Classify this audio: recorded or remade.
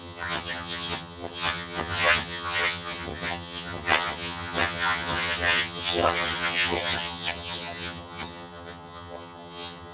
remade